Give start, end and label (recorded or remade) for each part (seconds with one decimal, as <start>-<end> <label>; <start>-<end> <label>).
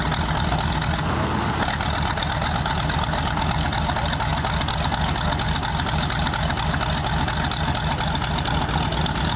0.0-9.4 recorded